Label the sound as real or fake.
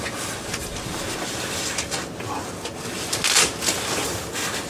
real